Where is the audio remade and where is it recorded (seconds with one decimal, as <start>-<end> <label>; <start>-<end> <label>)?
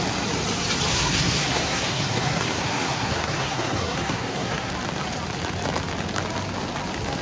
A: 0.0-0.9 recorded; 0.9-4.7 remade; 4.7-7.2 recorded